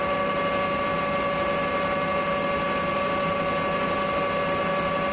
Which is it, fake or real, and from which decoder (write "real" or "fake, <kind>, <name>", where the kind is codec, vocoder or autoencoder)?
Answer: real